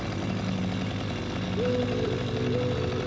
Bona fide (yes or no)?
yes